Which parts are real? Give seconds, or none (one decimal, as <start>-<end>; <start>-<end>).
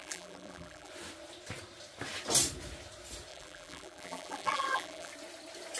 0.9-3.3; 5.1-5.8